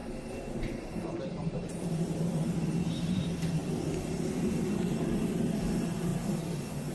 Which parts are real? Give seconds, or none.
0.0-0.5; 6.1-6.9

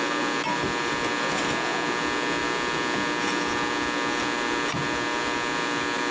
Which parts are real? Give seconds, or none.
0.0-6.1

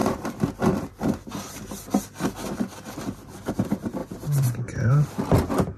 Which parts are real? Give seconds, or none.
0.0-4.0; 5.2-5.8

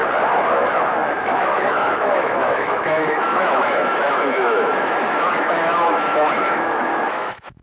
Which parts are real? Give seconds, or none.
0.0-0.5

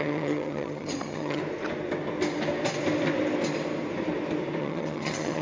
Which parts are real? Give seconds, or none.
1.4-4.6